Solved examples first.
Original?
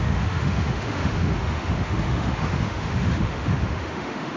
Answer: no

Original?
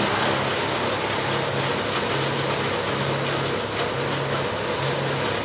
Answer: yes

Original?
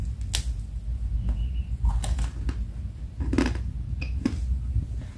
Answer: yes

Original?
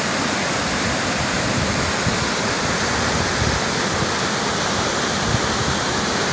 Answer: yes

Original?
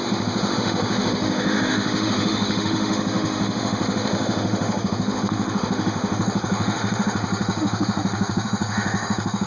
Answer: no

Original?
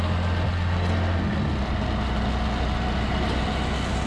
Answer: yes